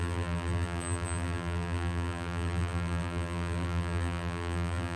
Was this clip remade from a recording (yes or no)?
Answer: yes